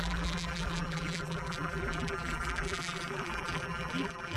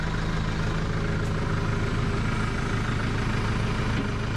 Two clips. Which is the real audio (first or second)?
second